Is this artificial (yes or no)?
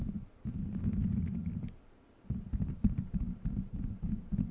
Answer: no